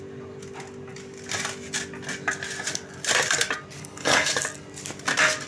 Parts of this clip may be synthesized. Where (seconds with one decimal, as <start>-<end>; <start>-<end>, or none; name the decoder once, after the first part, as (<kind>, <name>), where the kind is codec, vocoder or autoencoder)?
3.8-4.3 (codec, HILCodec)